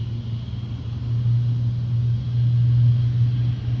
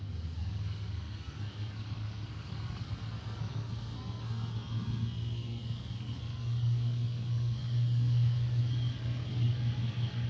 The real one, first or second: first